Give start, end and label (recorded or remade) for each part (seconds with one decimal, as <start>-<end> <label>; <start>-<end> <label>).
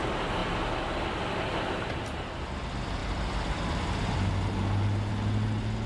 0.0-5.9 recorded